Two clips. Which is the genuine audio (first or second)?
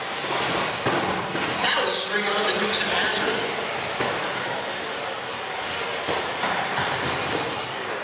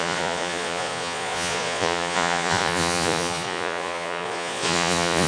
first